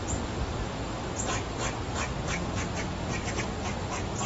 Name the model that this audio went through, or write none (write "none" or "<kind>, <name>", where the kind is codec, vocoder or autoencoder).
none